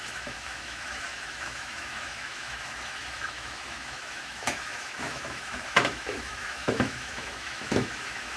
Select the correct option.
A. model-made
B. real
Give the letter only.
A